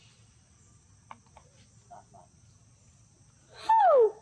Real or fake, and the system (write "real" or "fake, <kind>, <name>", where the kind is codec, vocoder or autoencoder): real